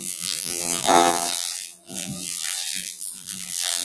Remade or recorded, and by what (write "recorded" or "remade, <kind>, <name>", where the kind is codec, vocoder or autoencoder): remade, vocoder, BigVGAN v2